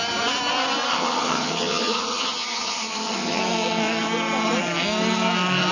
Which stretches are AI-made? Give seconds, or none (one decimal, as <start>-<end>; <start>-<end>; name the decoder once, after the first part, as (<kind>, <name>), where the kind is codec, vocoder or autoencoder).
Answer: 0.9-3.4 (vocoder, HiFi-GAN)

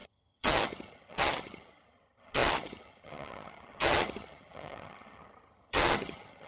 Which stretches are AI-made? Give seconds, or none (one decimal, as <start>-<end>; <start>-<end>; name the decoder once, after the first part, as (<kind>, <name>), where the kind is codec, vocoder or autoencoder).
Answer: 0.0-6.5 (vocoder, HiFi-GAN)

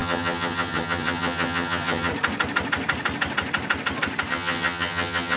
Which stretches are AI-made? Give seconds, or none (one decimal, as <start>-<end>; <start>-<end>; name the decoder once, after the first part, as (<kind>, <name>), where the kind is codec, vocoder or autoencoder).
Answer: 0.0-2.1 (vocoder, HiFi-GAN); 4.3-5.4